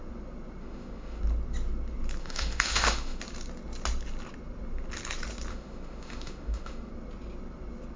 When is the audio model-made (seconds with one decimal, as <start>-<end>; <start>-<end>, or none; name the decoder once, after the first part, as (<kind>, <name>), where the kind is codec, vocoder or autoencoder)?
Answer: 0.6-1.2 (autoencoder, DAC-VAE); 2.2-3.2; 5.5-6.9